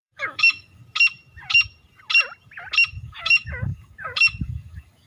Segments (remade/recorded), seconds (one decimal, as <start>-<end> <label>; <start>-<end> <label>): 0.0-0.8 remade; 0.8-2.9 recorded; 2.9-5.1 remade

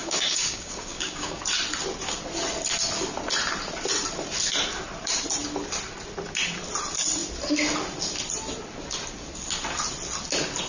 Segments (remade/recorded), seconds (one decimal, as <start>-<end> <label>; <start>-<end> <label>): 0.0-1.4 remade; 1.4-10.7 recorded

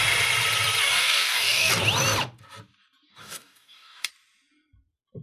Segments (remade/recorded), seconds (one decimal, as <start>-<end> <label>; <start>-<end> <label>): 0.0-0.8 recorded; 0.8-1.7 remade; 1.7-3.1 recorded; 3.1-4.1 remade; 4.1-5.2 recorded